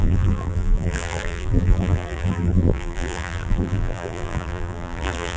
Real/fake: fake